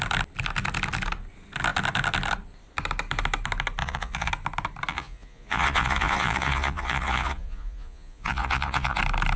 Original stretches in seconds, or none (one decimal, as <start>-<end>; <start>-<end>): 0.0-3.8; 4.3-4.9; 9.0-9.4